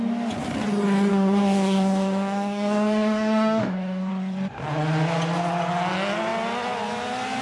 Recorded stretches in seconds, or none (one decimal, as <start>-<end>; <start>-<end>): 0.0-1.1; 4.1-7.4